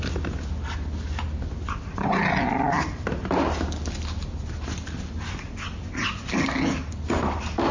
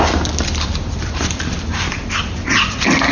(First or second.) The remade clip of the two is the second